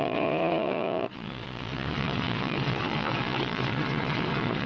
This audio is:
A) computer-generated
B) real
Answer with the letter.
A